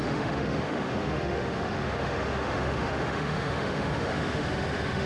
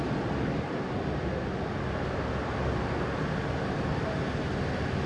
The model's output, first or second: first